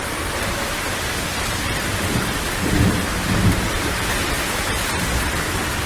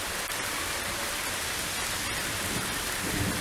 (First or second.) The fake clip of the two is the first